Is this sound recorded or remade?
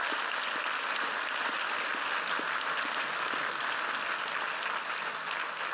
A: recorded